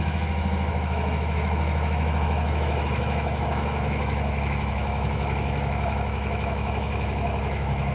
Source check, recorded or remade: remade